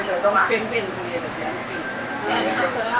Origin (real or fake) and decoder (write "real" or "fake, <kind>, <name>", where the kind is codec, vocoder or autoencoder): fake, autoencoder, DAC-VAE